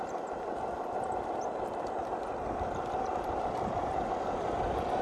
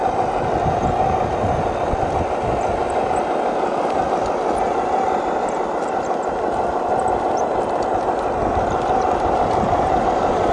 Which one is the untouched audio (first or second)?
second